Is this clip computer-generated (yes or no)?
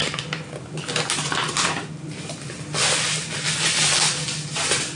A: no